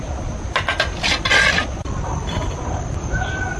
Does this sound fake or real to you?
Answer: real